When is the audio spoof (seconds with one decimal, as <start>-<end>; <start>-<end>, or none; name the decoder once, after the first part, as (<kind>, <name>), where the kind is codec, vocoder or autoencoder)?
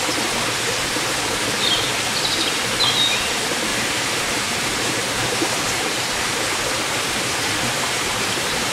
3.7-8.7 (vocoder, BigVGAN v2)